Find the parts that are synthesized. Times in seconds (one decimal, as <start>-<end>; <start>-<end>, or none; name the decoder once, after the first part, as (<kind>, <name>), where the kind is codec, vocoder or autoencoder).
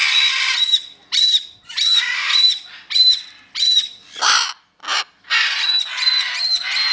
none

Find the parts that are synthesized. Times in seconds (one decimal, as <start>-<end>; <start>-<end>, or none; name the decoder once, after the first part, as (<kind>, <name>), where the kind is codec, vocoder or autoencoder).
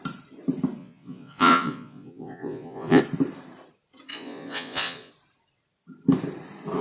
0.8-3.0 (vocoder, Vocos); 4.1-5.1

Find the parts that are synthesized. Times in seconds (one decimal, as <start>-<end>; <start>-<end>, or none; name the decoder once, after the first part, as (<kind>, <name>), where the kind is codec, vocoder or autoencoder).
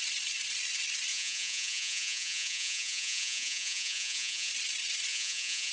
1.1-4.5 (vocoder, Vocos); 5.1-5.7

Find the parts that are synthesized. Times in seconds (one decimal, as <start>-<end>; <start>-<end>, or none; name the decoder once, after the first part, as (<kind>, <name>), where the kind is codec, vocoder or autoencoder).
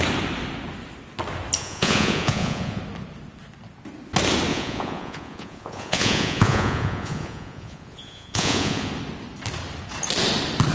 1.6-2.8 (vocoder, Vocos); 4.5-8.9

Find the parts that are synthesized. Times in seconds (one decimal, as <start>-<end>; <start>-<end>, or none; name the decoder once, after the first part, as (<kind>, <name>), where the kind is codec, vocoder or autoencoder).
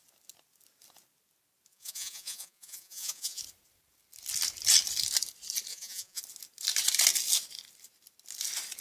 1.7-3.4 (vocoder, Vocos); 5.7-6.2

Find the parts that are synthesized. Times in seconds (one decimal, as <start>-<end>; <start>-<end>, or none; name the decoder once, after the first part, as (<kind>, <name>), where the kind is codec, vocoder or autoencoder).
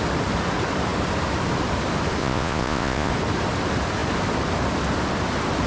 2.2-3.1 (vocoder, Vocos)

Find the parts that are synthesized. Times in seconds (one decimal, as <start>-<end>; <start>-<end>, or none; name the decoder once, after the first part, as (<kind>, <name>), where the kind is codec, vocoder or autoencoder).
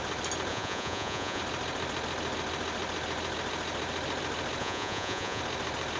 0.5-1.4 (vocoder, Vocos); 4.6-5.4